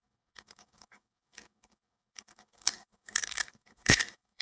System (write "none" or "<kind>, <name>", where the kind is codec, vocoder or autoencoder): codec, DAC